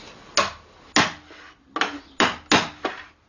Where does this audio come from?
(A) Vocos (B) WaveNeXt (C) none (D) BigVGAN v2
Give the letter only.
C